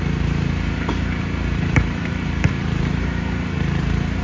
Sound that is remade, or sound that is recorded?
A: remade